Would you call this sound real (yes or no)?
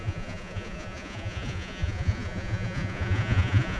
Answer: no